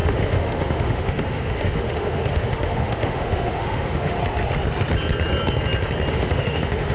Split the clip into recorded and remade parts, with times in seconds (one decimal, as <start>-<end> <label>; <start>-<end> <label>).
0.0-4.2 remade; 4.2-6.1 recorded; 6.1-6.9 remade